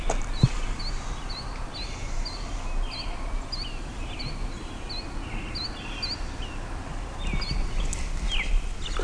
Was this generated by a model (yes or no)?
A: no